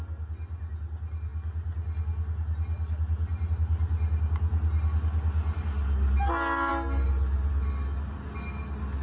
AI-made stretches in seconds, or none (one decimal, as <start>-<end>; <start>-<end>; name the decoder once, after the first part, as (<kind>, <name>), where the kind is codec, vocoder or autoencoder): none